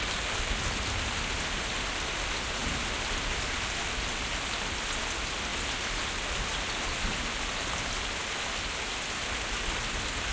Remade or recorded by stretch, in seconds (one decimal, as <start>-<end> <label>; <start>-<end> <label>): 0.0-10.3 recorded